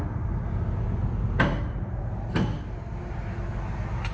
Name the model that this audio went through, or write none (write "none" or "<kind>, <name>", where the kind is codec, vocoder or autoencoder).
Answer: none